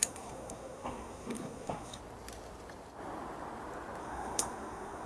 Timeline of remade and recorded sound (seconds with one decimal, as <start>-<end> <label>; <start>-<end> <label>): 0.0-2.0 remade; 2.0-4.0 recorded; 4.0-5.1 remade